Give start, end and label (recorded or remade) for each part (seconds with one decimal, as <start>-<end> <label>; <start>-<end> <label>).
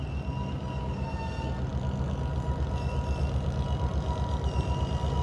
0.0-5.2 recorded